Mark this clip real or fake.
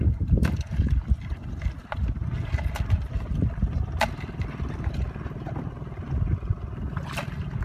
real